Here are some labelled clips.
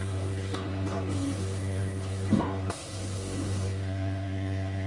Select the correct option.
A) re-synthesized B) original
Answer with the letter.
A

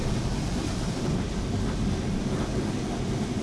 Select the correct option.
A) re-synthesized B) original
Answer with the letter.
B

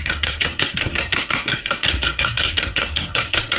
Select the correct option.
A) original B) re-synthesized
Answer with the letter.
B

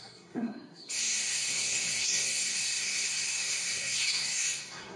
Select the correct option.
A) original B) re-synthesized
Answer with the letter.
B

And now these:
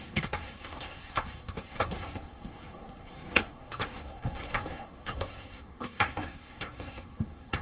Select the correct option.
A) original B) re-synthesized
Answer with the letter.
B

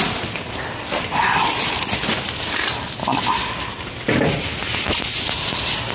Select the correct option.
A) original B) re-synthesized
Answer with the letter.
A